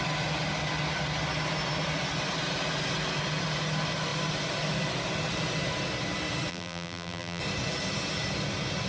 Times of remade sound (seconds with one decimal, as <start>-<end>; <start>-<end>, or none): 6.5-7.4